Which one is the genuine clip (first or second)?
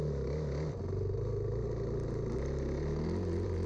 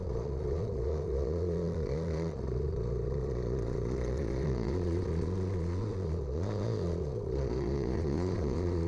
first